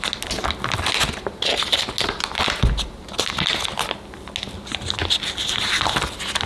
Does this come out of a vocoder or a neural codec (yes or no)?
no